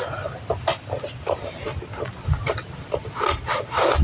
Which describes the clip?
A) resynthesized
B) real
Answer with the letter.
B